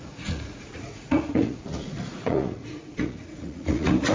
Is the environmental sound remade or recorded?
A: remade